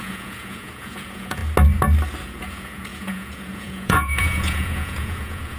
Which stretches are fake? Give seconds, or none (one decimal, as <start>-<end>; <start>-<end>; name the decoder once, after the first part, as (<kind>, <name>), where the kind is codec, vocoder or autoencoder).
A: 0.0-1.4 (vocoder, Vocos); 2.2-5.6